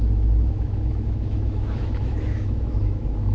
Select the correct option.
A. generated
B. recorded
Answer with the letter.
A